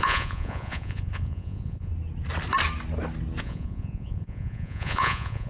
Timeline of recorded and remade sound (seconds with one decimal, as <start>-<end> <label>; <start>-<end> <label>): 0.0-1.9 remade; 1.9-3.4 recorded; 3.4-5.5 remade